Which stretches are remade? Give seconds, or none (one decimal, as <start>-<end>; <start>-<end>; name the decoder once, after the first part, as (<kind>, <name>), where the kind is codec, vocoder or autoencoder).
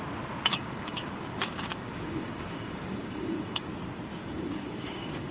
0.5-3.7 (codec, DAC); 4.2-5.3